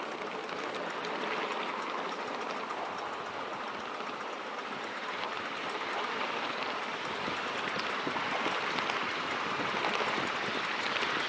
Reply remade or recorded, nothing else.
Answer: recorded